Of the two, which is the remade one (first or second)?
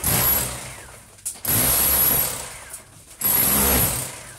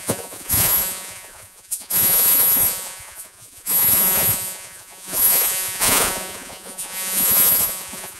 second